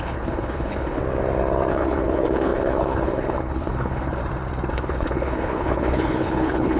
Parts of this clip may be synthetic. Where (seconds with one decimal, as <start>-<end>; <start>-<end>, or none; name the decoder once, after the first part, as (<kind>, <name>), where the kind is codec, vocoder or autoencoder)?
0.0-1.0 (codec, HILCodec); 1.7-4.2; 4.7-6.8

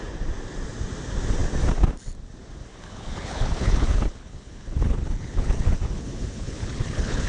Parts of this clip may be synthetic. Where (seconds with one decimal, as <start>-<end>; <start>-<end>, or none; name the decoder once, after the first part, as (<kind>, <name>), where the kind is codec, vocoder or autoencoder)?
2.7-7.3 (codec, HILCodec)